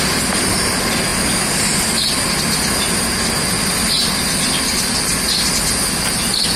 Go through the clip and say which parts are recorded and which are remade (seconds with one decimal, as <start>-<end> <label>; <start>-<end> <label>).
0.0-6.6 recorded